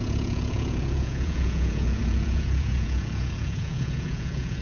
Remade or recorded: remade